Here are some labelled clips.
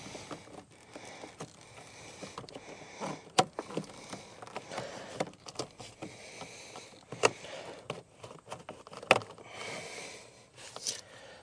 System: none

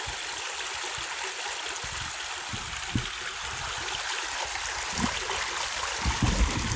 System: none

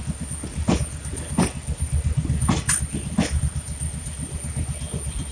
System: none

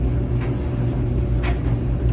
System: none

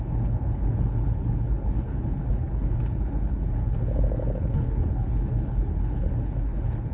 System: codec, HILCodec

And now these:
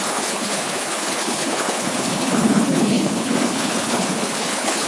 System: codec, HILCodec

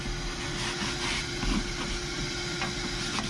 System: none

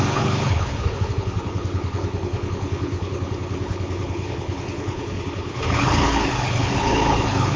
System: codec, HILCodec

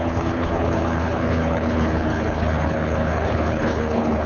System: codec, HILCodec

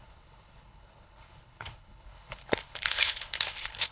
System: codec, HILCodec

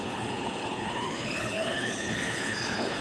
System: codec, HILCodec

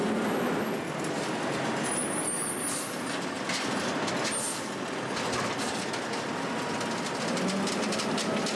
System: none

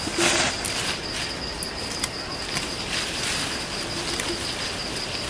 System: none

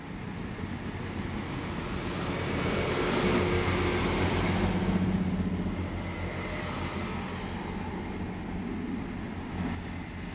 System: none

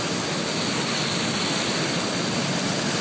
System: none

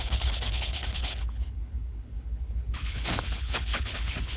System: codec, HILCodec